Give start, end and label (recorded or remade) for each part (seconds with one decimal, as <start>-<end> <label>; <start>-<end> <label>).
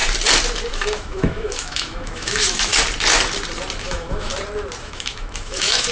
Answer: 0.0-0.7 recorded; 0.7-2.7 remade; 2.7-3.8 recorded; 3.8-4.3 remade; 4.3-4.8 recorded; 4.8-5.9 remade